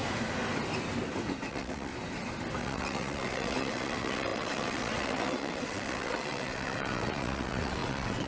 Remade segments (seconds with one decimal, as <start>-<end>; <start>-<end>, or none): 1.5-1.9; 2.6-8.3